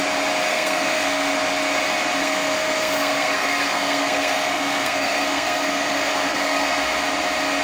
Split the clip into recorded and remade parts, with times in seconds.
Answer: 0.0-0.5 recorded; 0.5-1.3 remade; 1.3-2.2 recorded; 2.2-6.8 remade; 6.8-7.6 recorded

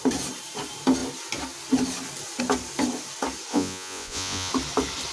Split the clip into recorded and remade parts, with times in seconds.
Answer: 0.0-3.5 recorded; 3.5-4.5 remade; 4.5-5.1 recorded

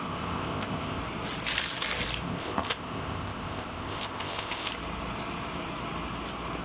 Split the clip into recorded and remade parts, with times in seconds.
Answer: 0.0-1.0 remade; 1.0-2.2 recorded; 2.2-4.7 remade; 4.7-6.6 recorded

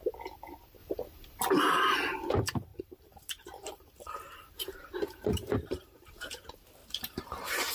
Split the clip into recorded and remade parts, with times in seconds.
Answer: 0.0-0.8 recorded; 0.8-1.5 remade; 1.5-2.7 recorded; 2.7-6.3 remade; 6.3-6.8 recorded; 6.8-7.7 remade

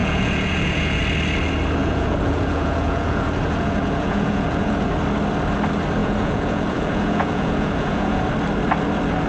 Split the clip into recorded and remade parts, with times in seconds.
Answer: 0.0-1.0 remade; 1.0-1.8 recorded; 1.8-4.9 remade; 4.9-6.0 recorded; 6.0-8.2 remade; 8.2-9.3 recorded

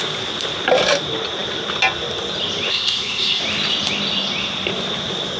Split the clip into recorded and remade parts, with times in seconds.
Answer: 0.0-2.7 recorded; 2.7-3.4 remade; 3.4-5.4 recorded

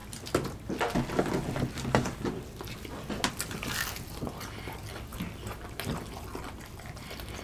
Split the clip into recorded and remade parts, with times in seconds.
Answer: 0.0-7.4 recorded

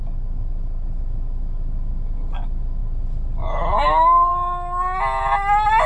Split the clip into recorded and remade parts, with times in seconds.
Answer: 0.0-5.9 recorded